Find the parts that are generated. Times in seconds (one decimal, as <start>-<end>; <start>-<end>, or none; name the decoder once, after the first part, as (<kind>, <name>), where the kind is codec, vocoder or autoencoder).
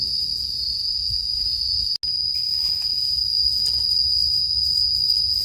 none